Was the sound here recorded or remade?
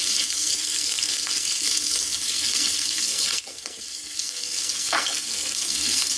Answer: remade